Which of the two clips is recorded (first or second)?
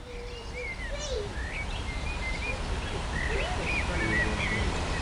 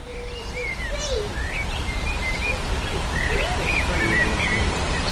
first